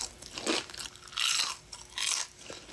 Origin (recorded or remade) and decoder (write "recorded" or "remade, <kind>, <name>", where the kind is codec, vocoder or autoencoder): recorded